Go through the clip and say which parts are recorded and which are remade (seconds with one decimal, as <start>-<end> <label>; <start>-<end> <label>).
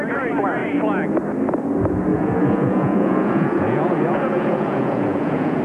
0.0-2.1 recorded; 2.1-5.6 remade